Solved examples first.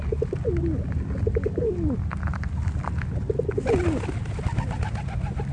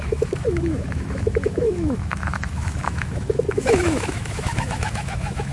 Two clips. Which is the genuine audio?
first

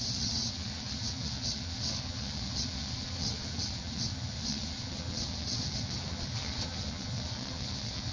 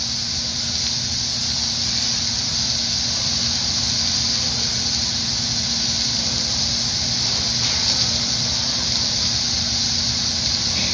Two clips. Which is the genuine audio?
second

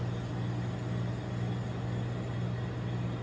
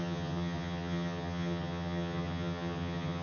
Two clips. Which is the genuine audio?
first